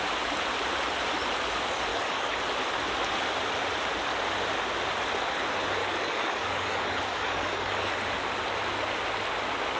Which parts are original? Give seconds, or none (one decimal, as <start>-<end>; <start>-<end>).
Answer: 0.0-1.9; 2.4-5.8; 7.9-9.8